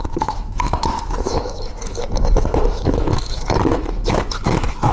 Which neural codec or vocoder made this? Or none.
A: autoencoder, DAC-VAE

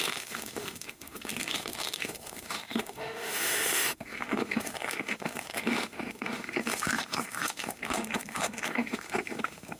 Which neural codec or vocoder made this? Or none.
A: autoencoder, DAC-VAE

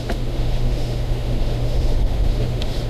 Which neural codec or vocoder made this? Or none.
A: autoencoder, DAC-VAE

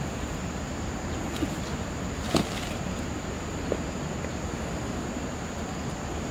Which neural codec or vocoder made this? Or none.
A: none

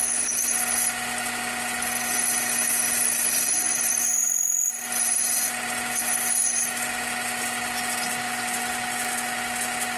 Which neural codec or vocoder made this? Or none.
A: none